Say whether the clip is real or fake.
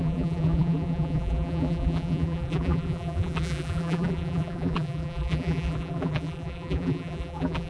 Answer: fake